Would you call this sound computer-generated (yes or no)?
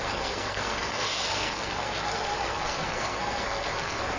yes